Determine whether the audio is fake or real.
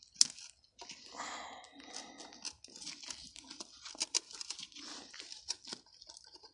real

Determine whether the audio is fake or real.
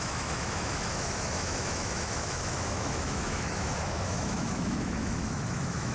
fake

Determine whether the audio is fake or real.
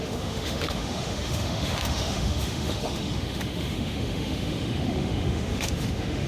fake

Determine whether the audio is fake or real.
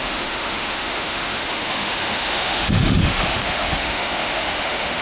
fake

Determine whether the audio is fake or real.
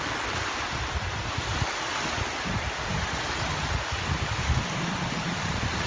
real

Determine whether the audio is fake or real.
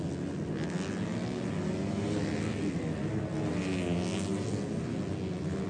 real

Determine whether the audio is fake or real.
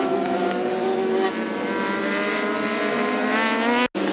real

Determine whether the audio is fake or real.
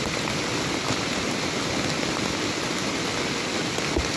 real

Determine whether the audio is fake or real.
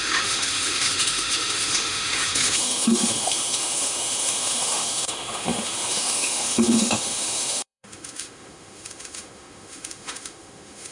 fake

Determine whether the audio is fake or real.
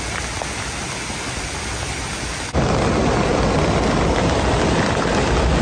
real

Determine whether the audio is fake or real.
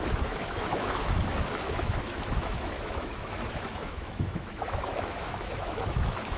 fake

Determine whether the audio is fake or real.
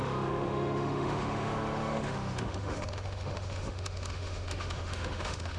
fake